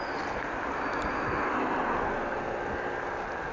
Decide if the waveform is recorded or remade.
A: recorded